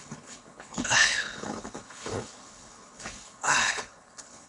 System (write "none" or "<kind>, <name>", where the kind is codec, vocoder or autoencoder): codec, HILCodec